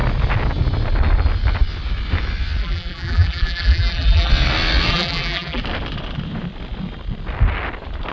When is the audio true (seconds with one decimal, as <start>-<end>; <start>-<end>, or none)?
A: 0.0-2.6; 4.3-4.9; 5.6-8.1

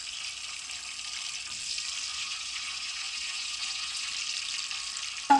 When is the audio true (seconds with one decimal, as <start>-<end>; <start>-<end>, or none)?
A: 0.0-2.1; 4.1-5.4

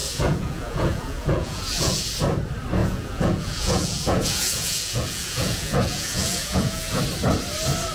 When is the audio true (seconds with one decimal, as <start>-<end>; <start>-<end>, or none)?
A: 2.0-2.8; 7.0-7.9

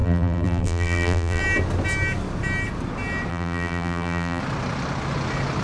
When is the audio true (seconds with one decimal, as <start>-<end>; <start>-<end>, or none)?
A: 1.4-3.3; 4.4-5.6